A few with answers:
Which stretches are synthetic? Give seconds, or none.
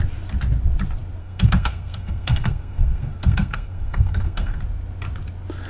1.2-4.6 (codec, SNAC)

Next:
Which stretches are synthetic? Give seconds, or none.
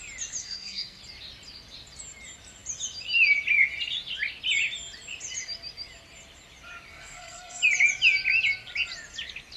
0.4-1.0 (codec, SNAC); 6.9-7.6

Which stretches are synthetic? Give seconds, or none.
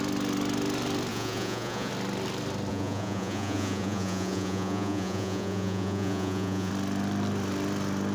1.1-1.9 (vocoder, Vocos); 2.7-6.7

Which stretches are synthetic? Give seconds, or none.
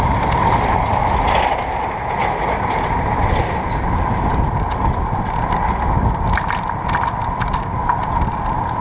none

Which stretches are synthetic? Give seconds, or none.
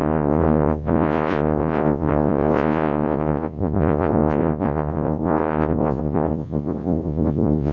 0.0-7.7 (vocoder, Vocos)